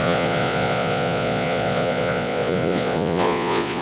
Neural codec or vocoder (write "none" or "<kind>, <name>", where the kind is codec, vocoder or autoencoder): vocoder, Vocos